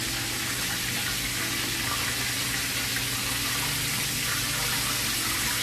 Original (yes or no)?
yes